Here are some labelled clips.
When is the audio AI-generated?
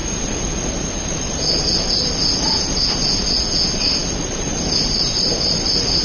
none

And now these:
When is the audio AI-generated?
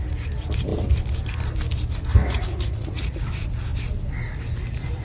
2.2-3.2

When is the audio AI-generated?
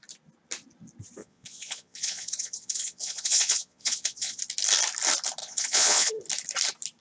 1.2-4.4; 5.4-6.1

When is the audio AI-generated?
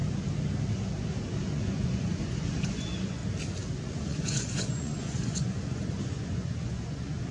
1.5-3.2; 3.8-7.3